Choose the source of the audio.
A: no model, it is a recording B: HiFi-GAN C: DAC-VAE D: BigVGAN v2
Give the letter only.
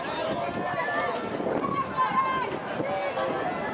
A